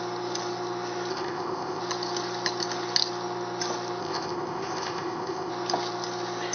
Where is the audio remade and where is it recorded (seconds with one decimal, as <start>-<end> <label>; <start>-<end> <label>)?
0.0-1.1 recorded; 1.1-1.8 remade; 1.8-4.0 recorded; 4.0-5.5 remade; 5.5-6.5 recorded